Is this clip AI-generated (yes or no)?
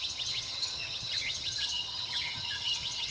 yes